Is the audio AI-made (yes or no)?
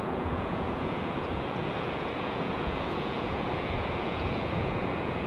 yes